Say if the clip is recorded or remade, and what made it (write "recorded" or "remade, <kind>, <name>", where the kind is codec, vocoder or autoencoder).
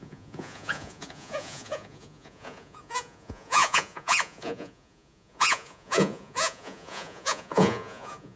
remade, vocoder, Vocos